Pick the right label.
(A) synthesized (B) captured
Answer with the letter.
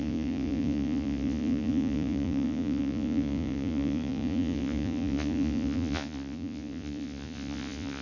A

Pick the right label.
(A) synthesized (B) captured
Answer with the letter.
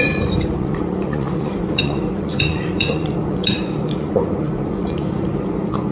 A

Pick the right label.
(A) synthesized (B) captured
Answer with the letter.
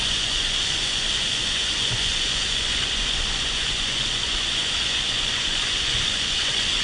A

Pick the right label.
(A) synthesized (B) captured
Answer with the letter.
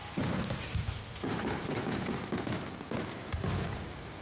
B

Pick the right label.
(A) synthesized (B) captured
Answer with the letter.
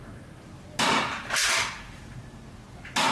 B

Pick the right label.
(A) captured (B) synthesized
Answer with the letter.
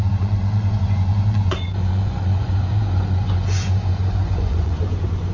B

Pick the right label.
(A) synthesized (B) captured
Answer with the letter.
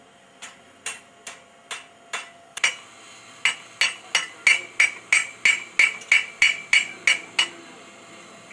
B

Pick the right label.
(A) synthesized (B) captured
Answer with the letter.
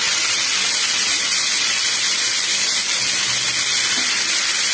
B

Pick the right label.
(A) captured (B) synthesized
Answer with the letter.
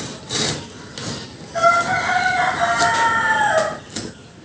A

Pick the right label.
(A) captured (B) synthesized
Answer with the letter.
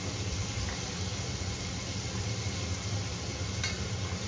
A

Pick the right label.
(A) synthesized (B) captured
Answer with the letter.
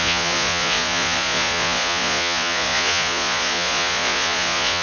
A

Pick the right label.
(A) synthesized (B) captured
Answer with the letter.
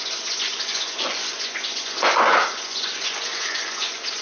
A